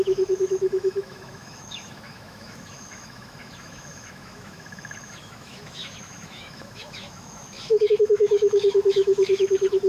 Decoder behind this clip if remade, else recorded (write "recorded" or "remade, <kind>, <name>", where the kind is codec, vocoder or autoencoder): remade, autoencoder, DAC-VAE